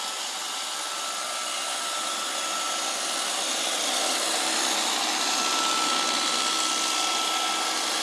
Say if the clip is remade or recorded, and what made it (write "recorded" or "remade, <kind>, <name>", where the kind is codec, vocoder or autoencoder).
recorded